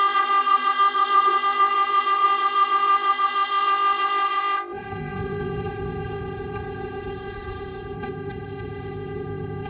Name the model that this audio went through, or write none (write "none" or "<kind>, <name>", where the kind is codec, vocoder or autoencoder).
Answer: codec, ZipCodec